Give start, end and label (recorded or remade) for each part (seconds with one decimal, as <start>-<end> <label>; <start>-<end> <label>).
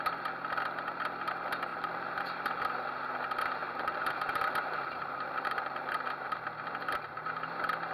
0.0-1.7 recorded; 1.7-2.5 remade; 2.5-3.6 recorded; 3.6-6.1 remade; 6.1-7.9 recorded